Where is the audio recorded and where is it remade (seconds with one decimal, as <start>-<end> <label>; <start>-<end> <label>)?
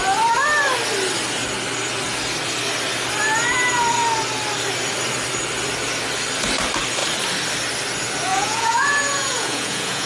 0.0-8.3 recorded; 8.3-10.1 remade